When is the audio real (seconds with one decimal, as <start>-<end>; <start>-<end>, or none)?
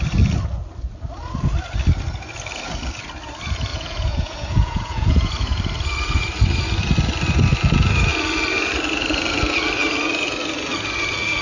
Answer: 0.0-3.7; 5.6-11.4